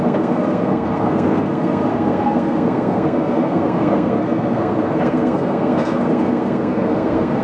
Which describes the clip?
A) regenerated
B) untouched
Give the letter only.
A